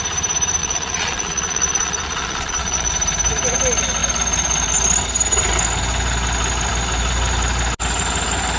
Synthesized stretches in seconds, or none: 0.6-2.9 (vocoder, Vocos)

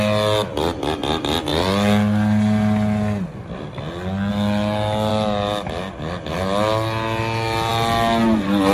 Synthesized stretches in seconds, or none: none

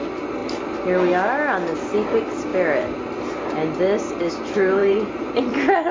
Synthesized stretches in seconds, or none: 4.8-5.4 (vocoder, BigVGAN v2)

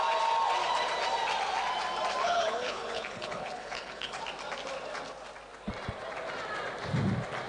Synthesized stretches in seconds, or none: 2.2-4.2 (codec, HILCodec)